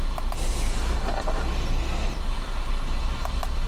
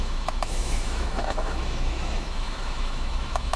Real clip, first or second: first